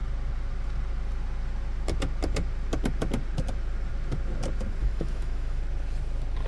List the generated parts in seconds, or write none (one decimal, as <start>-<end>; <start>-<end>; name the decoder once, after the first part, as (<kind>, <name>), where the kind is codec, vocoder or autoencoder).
4.8-5.6 (autoencoder, DAC-VAE)